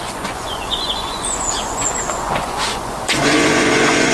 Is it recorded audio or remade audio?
remade